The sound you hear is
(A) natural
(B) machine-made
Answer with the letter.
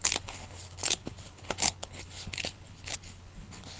B